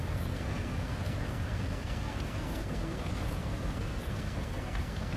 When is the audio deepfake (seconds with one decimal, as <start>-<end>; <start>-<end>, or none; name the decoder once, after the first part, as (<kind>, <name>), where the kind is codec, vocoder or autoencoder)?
0.0-5.2 (codec, SNAC)